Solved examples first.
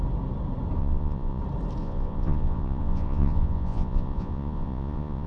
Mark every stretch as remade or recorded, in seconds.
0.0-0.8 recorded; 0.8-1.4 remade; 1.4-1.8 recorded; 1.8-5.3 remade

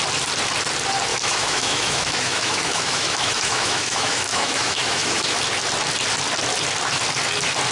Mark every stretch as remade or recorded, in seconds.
0.0-1.1 recorded; 1.1-5.4 remade; 5.4-7.7 recorded

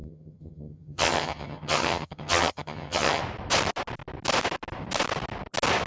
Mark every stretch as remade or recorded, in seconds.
0.0-3.2 remade; 3.2-5.9 recorded

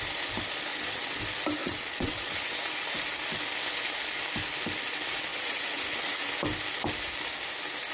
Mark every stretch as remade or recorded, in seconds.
0.0-0.7 recorded; 0.7-1.2 remade; 1.2-1.6 recorded; 1.6-2.7 remade; 2.7-5.3 recorded; 5.3-6.3 remade; 6.3-7.9 recorded